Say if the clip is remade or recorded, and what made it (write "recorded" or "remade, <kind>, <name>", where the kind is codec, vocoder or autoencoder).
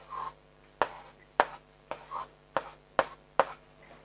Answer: recorded